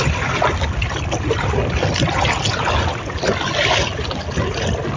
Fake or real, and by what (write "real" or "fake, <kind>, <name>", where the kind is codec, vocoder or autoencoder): real